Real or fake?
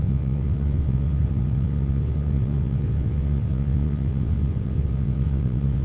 fake